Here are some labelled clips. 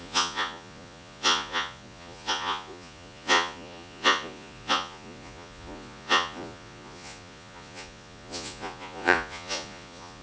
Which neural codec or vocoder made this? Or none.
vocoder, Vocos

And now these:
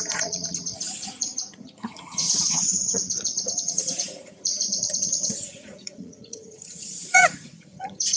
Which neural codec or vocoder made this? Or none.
vocoder, Vocos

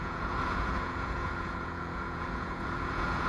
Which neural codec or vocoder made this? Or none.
vocoder, Vocos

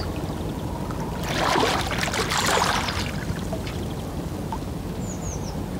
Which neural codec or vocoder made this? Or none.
none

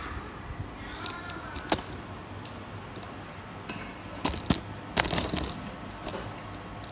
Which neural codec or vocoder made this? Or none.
none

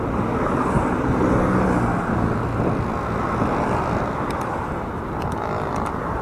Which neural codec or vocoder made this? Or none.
none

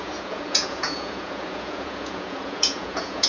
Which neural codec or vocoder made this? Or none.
vocoder, Vocos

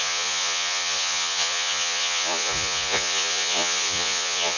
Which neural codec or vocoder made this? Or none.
vocoder, Vocos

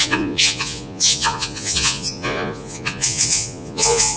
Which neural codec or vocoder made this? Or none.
vocoder, Vocos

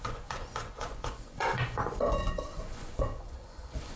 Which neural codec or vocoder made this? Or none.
vocoder, Vocos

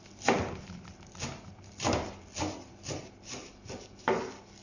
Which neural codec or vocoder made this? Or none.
none